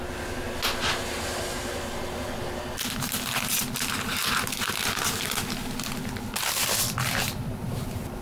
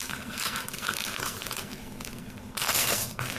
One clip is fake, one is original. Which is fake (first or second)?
second